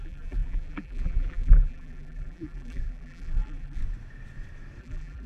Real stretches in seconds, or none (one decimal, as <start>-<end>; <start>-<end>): 3.8-4.8